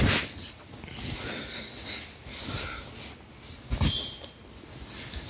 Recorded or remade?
recorded